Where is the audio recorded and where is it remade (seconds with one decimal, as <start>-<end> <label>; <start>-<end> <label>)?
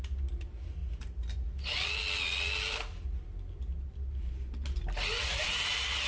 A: 0.0-6.1 recorded